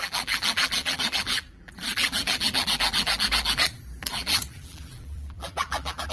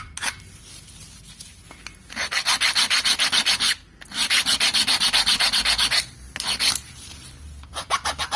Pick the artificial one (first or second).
first